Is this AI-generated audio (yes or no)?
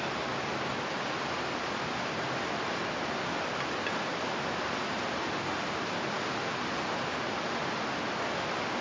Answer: no